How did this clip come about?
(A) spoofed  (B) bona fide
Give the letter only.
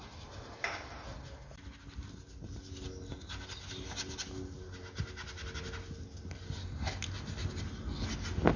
B